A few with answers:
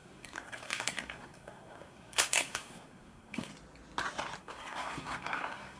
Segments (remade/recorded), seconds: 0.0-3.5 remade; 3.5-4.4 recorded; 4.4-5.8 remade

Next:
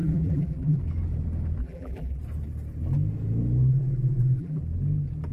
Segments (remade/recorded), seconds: 0.0-0.8 remade; 0.8-1.6 recorded; 1.6-2.2 remade; 2.2-3.7 recorded; 3.7-4.6 remade; 4.6-5.3 recorded

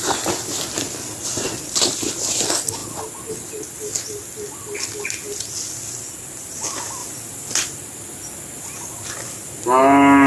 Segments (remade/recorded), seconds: 0.0-10.3 recorded

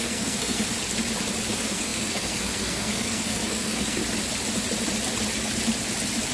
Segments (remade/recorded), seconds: 0.0-0.7 remade; 0.7-1.5 recorded; 1.5-4.0 remade; 4.0-6.3 recorded

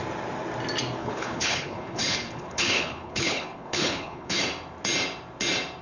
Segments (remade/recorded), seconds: 0.0-1.0 recorded; 1.0-4.4 remade; 4.4-5.8 recorded